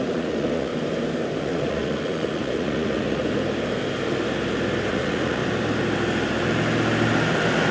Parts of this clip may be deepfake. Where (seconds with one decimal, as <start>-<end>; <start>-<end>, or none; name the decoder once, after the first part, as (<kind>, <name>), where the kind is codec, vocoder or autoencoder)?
0.0-0.7 (vocoder, Vocos); 1.4-3.2; 4.9-5.4